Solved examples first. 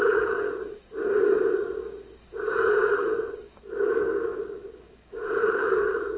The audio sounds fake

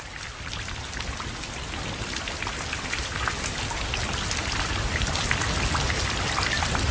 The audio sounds real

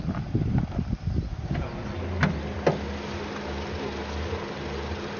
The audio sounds real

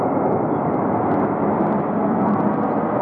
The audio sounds real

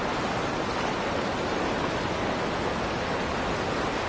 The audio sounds real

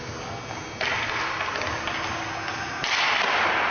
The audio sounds real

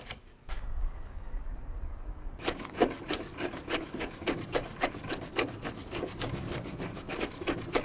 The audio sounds fake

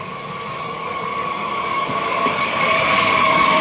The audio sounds fake